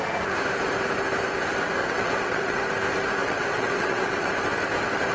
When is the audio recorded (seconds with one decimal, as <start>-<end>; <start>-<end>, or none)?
0.0-1.8; 2.6-3.2; 4.3-5.1